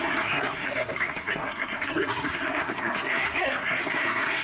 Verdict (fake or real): fake